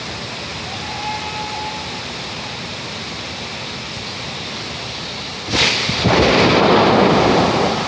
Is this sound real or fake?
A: real